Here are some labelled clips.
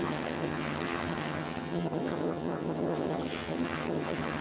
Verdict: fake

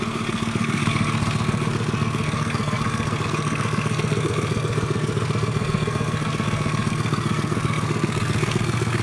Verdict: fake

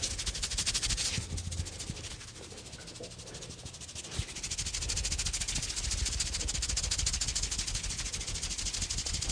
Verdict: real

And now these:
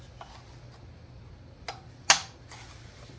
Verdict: real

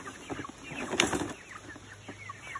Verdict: real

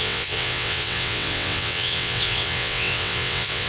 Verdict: fake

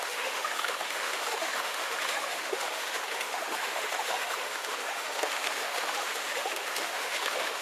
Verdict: fake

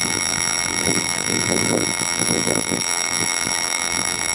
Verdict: fake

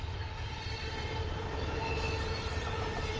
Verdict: real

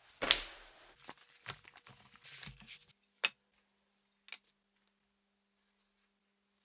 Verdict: real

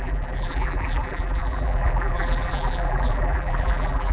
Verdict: fake